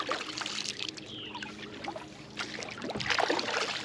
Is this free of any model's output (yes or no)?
yes